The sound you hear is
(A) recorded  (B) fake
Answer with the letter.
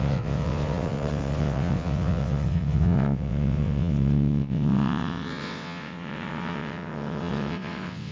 B